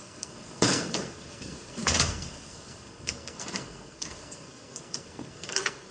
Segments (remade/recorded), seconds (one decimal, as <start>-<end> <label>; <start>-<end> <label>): 0.0-5.9 remade